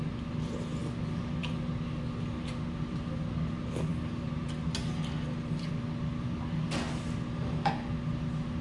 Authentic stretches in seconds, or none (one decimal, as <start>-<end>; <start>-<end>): 0.0-8.6

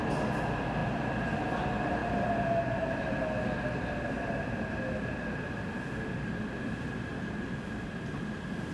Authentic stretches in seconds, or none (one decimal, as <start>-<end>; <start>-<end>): 0.0-8.7